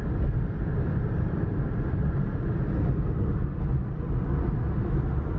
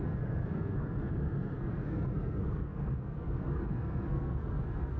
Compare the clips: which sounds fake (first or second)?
second